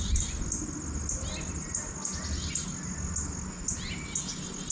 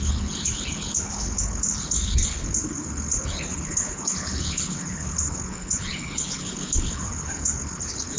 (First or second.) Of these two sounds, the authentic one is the first